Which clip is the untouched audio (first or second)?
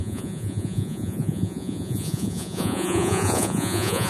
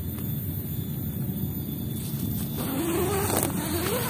second